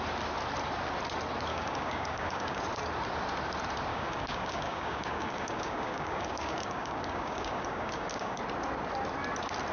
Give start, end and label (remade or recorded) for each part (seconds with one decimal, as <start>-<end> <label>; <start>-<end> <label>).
0.0-1.5 recorded; 1.5-2.6 remade; 2.6-3.9 recorded; 3.9-8.4 remade; 8.4-9.7 recorded

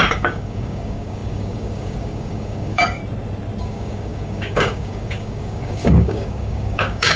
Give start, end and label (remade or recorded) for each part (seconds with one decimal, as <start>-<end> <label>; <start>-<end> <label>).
0.0-3.0 remade; 3.0-3.6 recorded; 3.6-7.2 remade

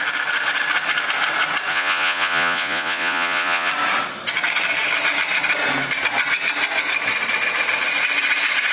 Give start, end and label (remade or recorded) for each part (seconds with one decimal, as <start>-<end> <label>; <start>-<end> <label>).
0.0-1.7 recorded; 1.7-3.7 remade; 3.7-8.7 recorded

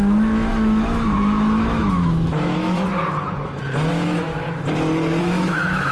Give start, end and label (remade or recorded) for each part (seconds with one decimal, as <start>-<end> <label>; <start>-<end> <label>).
0.0-2.9 remade; 2.9-3.9 recorded; 3.9-4.3 remade; 4.3-5.2 recorded; 5.2-5.9 remade

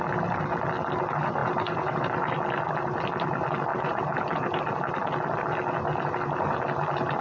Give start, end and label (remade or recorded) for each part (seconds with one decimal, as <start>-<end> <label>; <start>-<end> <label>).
0.0-1.4 recorded; 1.4-2.3 remade; 2.3-3.7 recorded; 3.7-4.6 remade; 4.6-7.2 recorded

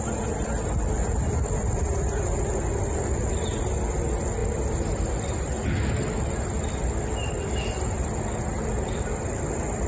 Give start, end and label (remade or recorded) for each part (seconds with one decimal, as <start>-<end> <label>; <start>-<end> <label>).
0.0-9.9 recorded

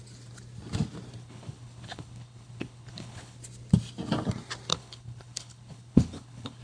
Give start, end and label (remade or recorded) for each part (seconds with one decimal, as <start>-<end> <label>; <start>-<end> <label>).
0.0-1.2 recorded; 1.2-3.4 remade; 3.4-4.7 recorded; 4.7-6.6 remade

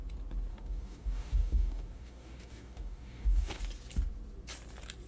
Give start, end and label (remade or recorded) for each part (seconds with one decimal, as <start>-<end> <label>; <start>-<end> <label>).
0.0-0.5 recorded; 0.5-3.6 remade; 3.6-5.1 recorded